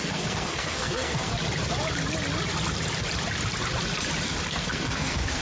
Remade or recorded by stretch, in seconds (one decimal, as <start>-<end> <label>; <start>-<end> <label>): 0.0-1.3 remade; 1.3-4.5 recorded; 4.5-5.4 remade